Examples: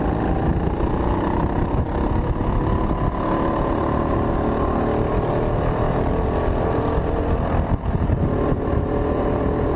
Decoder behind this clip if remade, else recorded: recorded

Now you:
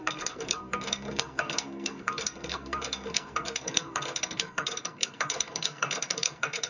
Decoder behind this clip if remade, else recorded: remade, codec, SNAC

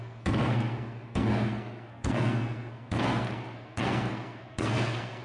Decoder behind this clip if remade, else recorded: remade, codec, SNAC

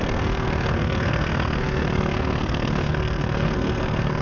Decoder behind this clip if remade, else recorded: remade, codec, SNAC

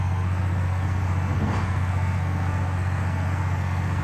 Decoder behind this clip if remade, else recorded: remade, codec, SNAC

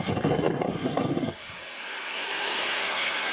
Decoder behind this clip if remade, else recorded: remade, codec, SNAC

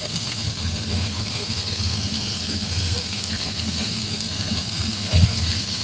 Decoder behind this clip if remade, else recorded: remade, codec, SNAC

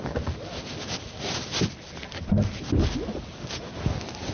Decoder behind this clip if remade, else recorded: recorded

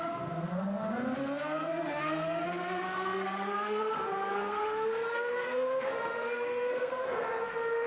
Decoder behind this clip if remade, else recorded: remade, codec, SNAC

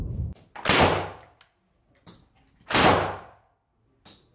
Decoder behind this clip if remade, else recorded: recorded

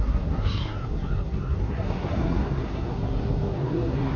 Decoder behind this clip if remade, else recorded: remade, codec, SNAC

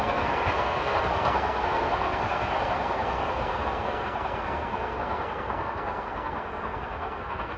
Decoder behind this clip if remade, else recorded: remade, codec, SNAC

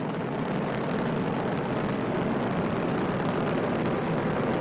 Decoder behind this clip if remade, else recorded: recorded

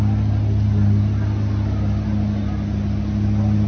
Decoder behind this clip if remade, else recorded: recorded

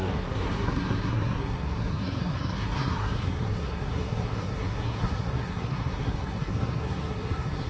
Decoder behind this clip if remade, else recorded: remade, codec, SNAC